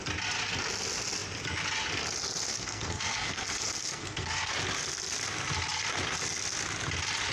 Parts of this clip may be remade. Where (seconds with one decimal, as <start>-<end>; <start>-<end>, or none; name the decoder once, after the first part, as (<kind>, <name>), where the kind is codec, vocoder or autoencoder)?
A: 2.5-4.5 (codec, SNAC)